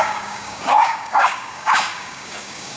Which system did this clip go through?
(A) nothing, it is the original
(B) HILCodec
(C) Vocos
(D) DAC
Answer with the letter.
D